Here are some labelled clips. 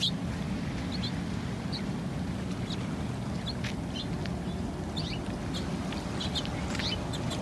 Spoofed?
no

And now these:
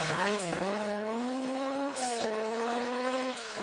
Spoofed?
yes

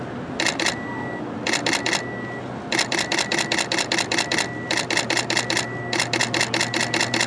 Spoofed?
no